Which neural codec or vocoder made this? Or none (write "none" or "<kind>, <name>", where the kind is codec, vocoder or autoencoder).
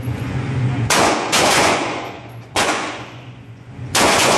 vocoder, Vocos